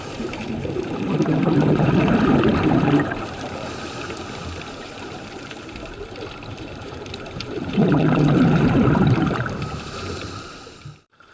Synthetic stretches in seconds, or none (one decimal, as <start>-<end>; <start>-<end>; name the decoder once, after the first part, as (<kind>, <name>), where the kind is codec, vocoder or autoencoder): 0.0-1.4 (vocoder, BigVGAN v2); 2.0-11.3